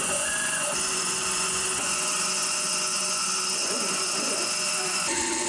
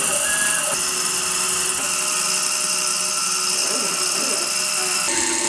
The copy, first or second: first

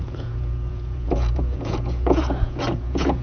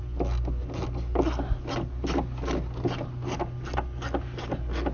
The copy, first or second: first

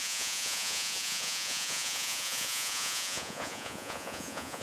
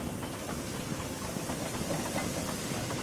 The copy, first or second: first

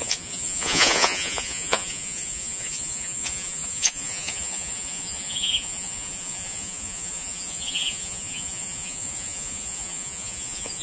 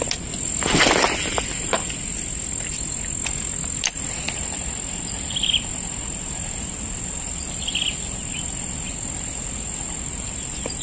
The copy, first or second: first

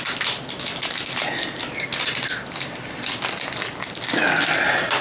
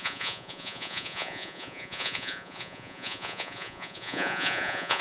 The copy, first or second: second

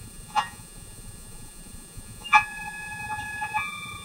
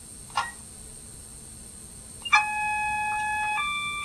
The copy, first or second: first